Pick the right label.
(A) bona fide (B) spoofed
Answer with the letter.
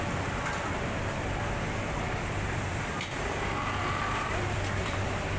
B